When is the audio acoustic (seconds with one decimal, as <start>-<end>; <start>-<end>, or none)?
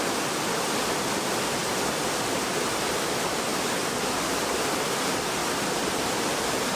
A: 0.0-5.4